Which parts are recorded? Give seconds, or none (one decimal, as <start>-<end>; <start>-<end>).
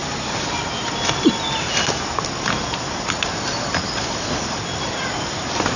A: 0.0-5.8